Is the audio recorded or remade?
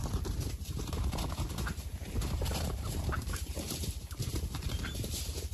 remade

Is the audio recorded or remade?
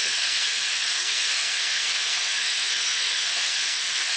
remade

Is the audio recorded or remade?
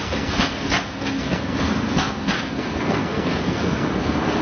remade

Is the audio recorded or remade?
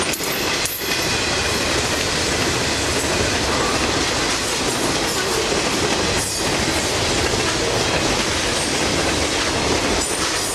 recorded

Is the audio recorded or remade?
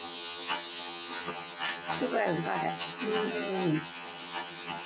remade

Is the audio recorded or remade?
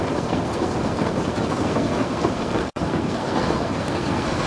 remade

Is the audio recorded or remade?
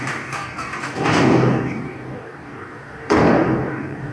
remade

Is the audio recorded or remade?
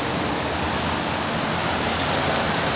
recorded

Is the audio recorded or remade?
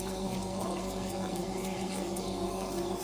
remade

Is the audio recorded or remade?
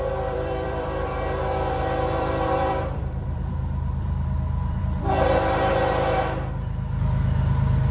remade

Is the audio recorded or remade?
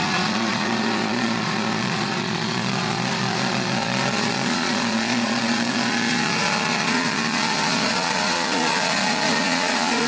remade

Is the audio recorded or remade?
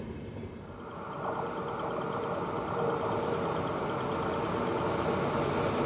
recorded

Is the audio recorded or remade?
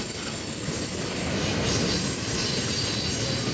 recorded